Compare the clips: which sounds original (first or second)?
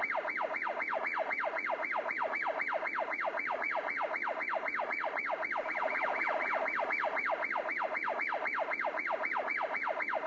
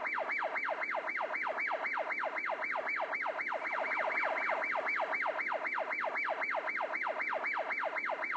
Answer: second